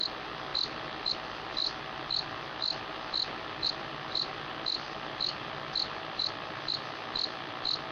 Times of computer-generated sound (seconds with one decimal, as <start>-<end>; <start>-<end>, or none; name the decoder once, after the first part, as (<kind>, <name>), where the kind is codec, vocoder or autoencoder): 0.5-1.1 (vocoder, BigVGAN v2)